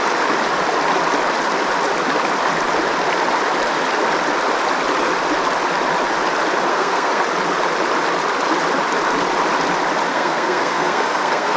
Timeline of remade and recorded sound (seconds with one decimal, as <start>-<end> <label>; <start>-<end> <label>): 0.0-6.7 recorded; 6.7-7.2 remade; 7.2-10.1 recorded; 10.1-11.6 remade

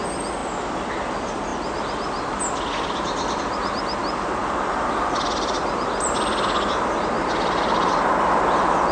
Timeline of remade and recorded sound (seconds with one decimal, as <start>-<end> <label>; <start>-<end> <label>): 0.0-8.9 recorded

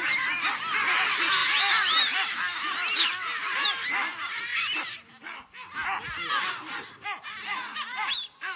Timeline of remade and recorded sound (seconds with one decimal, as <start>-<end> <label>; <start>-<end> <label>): 0.0-1.4 remade; 1.4-2.0 recorded; 2.0-4.5 remade; 4.5-6.3 recorded; 6.3-8.6 remade